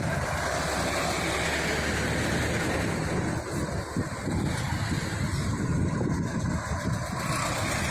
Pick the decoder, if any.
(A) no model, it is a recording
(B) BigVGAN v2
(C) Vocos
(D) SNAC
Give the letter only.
A